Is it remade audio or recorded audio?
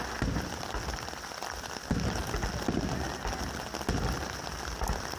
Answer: recorded